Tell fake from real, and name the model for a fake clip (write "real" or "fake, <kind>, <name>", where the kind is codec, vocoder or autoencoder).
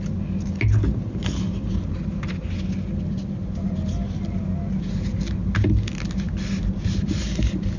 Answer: real